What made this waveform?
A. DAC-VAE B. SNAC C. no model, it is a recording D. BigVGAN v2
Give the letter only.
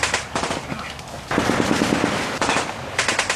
C